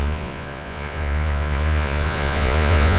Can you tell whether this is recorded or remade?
remade